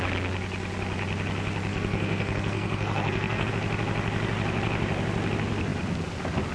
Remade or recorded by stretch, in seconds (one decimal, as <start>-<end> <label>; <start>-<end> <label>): 0.0-1.7 recorded; 1.7-3.5 remade; 3.5-6.5 recorded